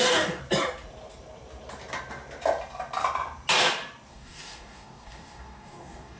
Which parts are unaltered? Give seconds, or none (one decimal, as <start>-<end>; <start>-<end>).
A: 0.4-4.1